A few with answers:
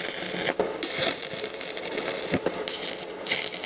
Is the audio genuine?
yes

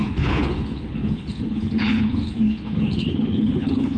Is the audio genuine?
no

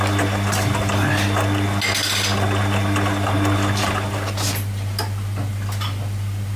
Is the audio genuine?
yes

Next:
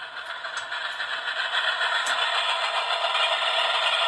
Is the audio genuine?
yes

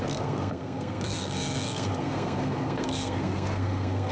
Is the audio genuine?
no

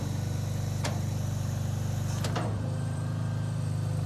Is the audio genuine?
no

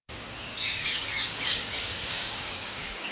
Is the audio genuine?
no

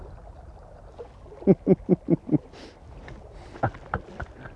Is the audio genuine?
yes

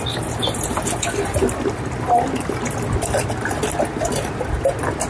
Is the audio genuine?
yes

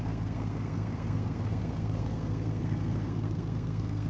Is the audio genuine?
no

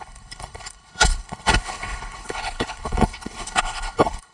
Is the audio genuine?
no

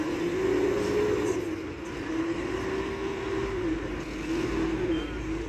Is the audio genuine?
yes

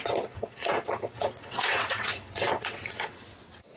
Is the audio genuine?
no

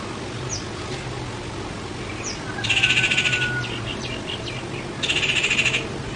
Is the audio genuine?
yes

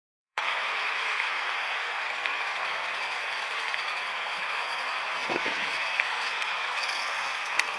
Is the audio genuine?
no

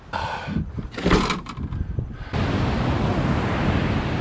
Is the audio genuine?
yes